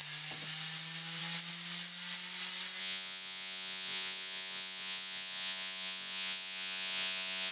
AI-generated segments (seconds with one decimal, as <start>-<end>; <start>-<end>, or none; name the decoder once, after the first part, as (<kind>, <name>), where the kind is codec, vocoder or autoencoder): 2.8-7.5 (vocoder, Vocos)